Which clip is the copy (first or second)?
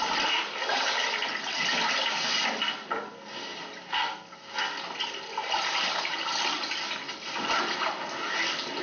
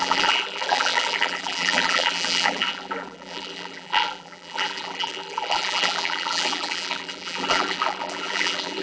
second